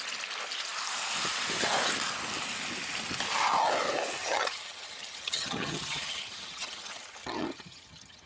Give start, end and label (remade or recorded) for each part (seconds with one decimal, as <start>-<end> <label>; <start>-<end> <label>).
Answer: 0.0-4.2 recorded; 4.2-8.3 remade